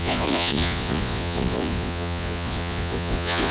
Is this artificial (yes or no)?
yes